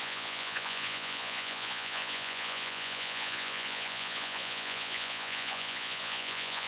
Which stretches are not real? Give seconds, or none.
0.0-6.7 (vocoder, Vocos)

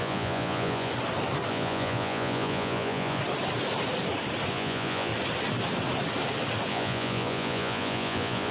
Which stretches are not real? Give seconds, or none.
0.0-0.9 (vocoder, Vocos); 1.5-3.2; 4.5-5.1; 6.7-8.5